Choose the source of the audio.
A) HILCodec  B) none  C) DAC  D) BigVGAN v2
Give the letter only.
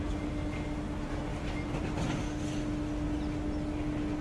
B